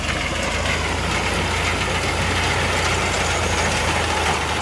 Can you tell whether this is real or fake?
real